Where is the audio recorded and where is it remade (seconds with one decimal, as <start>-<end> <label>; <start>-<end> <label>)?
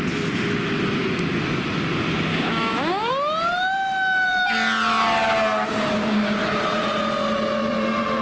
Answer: 0.0-2.3 recorded; 2.3-3.1 remade; 3.1-5.9 recorded; 5.9-6.4 remade; 6.4-8.2 recorded